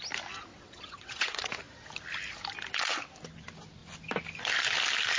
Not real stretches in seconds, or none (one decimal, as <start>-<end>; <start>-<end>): 0.5-1.6